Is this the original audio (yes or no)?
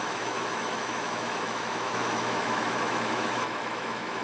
no